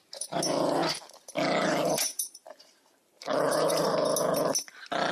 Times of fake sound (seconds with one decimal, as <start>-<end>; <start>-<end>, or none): 0.8-3.9